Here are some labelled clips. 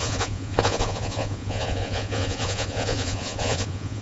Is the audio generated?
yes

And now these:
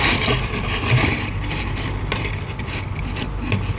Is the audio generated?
no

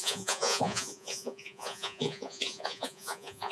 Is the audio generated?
yes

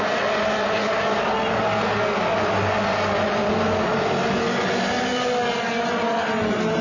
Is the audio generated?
no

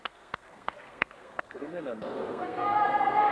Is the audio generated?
yes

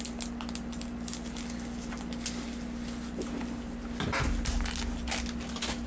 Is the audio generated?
no